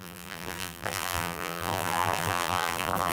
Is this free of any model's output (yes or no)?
no